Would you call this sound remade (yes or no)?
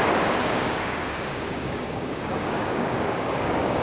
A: yes